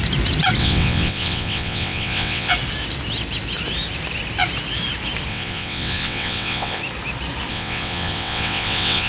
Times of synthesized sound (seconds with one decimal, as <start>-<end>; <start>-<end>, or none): 0.6-2.5; 5.3-6.8; 7.5-9.1